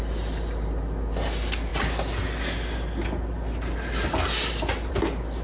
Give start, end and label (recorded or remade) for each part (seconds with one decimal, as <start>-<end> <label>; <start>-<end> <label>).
0.0-5.4 recorded